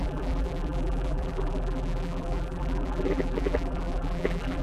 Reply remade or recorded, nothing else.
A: remade